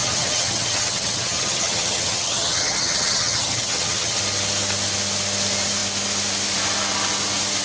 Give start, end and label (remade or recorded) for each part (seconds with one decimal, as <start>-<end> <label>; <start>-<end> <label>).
0.0-4.2 remade; 4.2-7.6 recorded